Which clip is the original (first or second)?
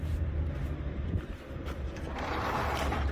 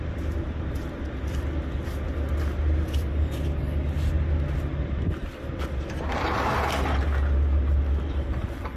second